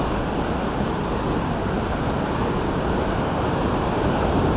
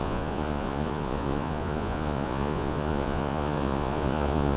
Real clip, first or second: first